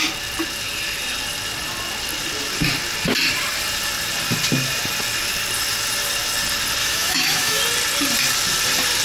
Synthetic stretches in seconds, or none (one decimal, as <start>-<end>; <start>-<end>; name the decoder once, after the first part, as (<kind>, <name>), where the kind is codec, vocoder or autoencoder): 6.8-7.6 (autoencoder, DAC-VAE)